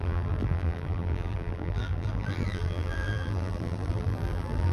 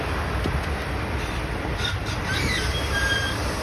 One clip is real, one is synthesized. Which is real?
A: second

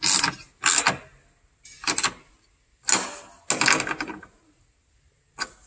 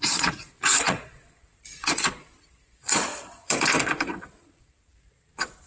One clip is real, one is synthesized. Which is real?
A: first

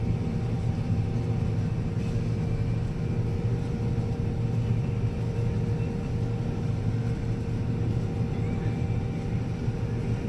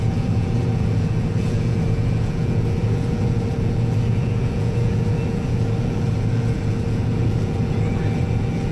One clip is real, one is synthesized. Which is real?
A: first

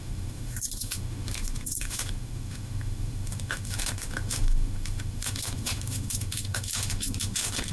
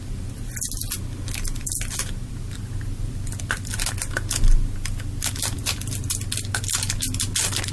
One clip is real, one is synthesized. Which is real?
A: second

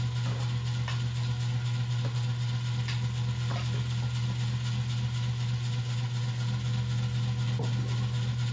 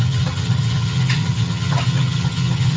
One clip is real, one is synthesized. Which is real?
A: first